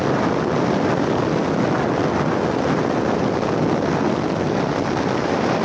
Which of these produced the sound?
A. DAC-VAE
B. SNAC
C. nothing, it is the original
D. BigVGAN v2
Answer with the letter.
C